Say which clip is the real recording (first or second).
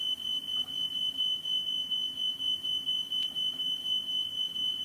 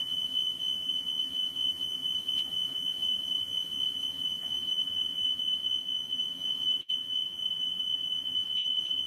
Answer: first